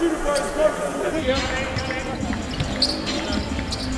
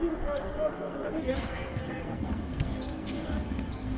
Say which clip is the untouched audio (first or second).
first